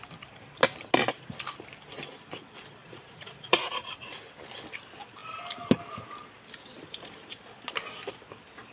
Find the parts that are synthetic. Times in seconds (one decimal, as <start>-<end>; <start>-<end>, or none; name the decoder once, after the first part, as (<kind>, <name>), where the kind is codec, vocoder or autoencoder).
2.8-4.2 (vocoder, Vocos)